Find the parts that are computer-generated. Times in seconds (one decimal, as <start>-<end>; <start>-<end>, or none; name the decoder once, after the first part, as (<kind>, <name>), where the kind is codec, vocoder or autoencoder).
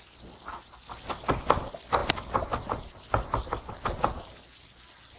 none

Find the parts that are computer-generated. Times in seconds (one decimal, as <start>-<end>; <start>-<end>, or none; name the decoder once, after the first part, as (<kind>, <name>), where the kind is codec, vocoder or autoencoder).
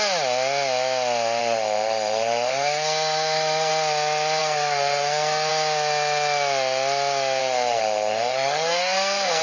1.4-3.7 (codec, SNAC); 4.4-5.5; 7.4-9.4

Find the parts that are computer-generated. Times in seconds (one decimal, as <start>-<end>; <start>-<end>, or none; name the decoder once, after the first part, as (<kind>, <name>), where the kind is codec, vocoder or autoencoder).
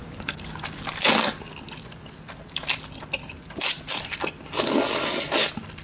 none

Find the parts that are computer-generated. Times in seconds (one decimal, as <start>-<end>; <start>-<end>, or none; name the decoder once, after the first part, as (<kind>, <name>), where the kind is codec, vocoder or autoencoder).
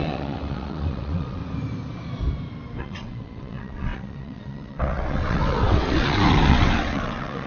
0.0-1.4 (vocoder, WaveNeXt); 2.8-7.5